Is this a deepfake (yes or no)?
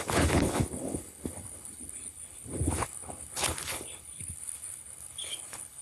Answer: yes